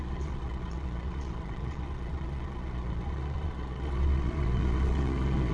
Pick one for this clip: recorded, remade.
remade